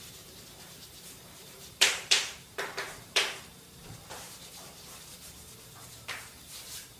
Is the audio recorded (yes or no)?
no